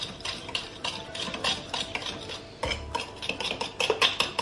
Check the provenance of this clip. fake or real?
real